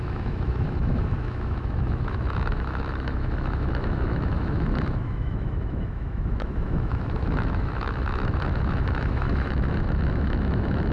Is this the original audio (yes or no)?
no